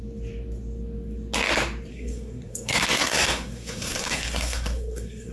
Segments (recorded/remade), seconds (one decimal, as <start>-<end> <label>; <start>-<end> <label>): 0.0-1.9 recorded; 1.9-5.3 remade